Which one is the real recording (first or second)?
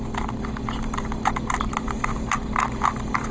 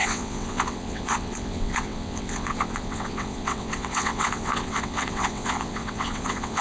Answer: first